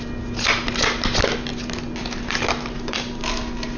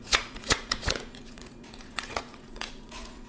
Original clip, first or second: first